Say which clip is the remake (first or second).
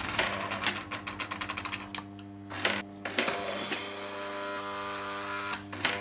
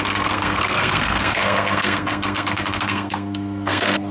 second